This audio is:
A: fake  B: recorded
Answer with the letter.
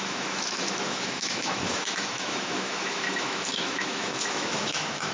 A